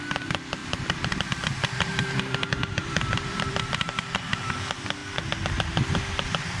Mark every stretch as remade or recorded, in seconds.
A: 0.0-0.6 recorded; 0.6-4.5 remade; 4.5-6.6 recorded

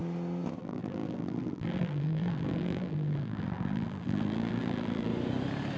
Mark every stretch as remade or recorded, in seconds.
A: 0.0-0.6 recorded; 0.6-5.1 remade; 5.1-5.8 recorded

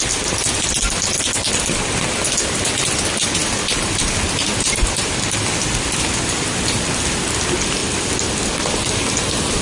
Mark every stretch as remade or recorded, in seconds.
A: 0.0-7.8 recorded; 7.8-9.6 remade